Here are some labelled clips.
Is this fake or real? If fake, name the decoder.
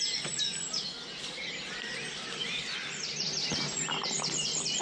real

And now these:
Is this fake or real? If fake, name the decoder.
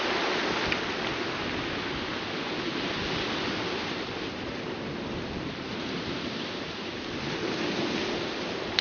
real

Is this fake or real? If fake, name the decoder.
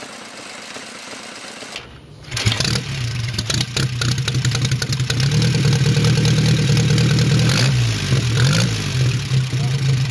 real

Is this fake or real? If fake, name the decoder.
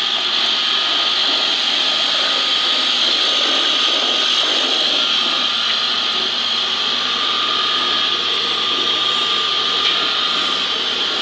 real